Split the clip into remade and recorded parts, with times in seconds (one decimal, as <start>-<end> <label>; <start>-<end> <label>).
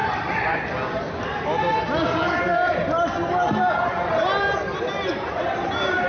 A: 0.0-6.1 recorded